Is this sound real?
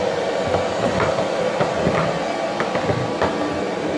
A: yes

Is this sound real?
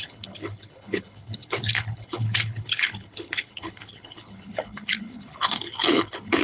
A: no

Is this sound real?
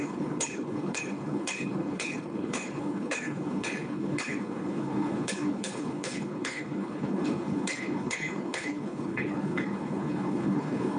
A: no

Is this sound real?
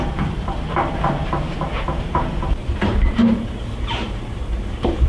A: no